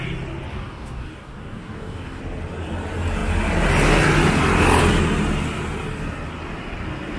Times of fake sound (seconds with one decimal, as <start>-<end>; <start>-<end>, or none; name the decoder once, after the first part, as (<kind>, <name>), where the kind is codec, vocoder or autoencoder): 0.5-2.2 (codec, DAC)